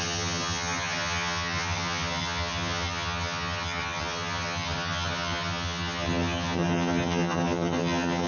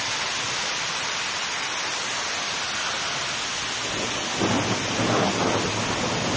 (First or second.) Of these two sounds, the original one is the second